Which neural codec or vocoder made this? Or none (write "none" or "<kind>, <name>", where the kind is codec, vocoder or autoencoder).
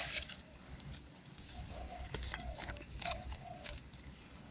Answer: codec, DAC